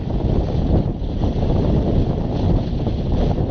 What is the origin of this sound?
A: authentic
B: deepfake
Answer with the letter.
A